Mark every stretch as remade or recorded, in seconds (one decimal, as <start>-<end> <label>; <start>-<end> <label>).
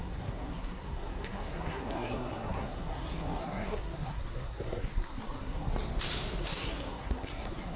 0.0-5.7 remade; 5.7-6.4 recorded; 6.4-7.8 remade